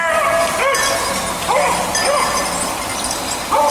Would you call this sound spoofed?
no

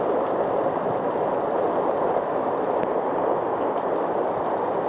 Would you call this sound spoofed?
no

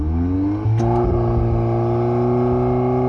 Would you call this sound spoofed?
no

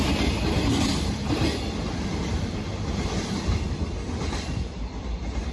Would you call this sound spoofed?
yes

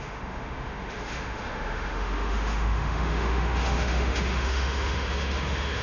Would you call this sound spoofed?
yes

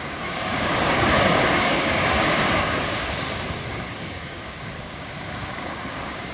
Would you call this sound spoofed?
yes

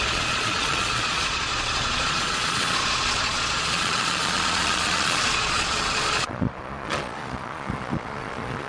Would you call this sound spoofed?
yes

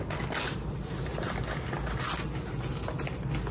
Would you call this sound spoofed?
no